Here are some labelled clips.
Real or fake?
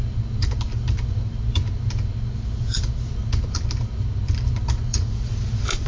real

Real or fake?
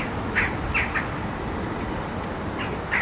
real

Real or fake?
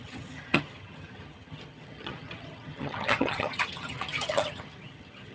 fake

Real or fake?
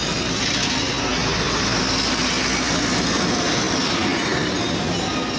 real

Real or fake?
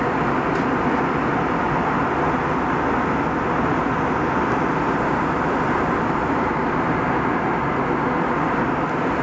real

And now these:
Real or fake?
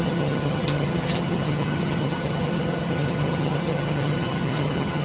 fake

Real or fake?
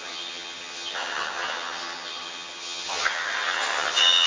fake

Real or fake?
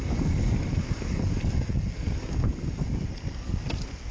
real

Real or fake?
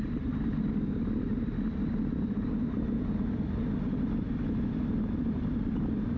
real